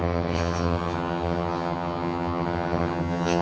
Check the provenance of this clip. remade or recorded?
remade